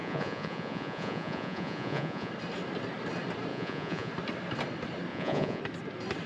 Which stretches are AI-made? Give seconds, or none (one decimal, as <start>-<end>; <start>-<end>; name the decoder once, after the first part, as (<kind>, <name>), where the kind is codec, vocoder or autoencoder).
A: 0.0-2.3 (vocoder, Vocos); 3.5-4.1; 5.1-5.6